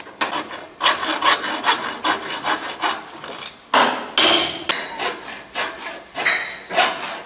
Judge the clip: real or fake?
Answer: real